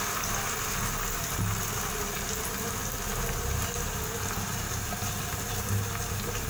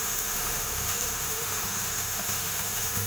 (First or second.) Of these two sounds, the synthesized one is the second